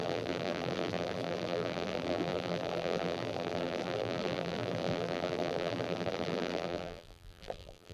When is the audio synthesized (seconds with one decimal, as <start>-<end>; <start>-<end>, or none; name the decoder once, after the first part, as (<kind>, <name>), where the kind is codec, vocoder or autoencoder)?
0.0-7.9 (vocoder, BigVGAN v2)